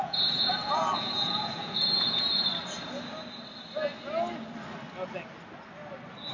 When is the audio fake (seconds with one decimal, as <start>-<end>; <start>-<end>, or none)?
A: 0.0-2.5